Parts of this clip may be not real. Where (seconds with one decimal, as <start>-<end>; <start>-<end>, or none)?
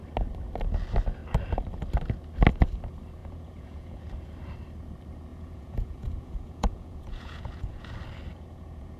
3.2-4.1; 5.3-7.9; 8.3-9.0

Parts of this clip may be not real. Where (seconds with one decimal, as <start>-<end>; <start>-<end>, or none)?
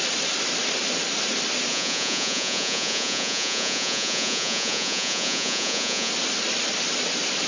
1.7-6.1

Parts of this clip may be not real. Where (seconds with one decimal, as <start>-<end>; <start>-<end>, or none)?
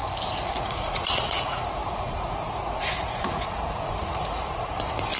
0.6-5.2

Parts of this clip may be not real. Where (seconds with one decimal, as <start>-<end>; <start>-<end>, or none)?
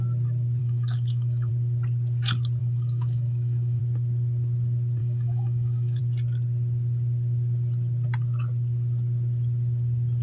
0.6-1.5; 2.6-3.8; 5.0-6.0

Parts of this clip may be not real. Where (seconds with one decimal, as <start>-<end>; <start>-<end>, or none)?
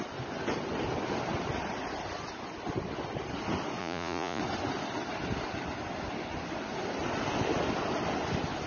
3.8-4.4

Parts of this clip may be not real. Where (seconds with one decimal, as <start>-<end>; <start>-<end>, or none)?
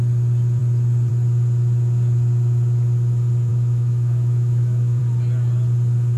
3.5-5.0